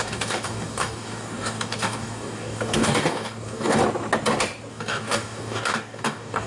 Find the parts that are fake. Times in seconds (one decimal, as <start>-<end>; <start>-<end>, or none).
0.0-3.8; 4.7-6.5